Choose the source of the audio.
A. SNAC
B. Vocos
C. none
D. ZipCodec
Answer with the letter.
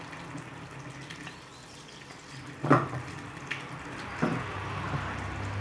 C